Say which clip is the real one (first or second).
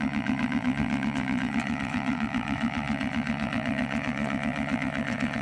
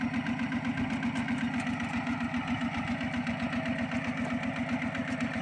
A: second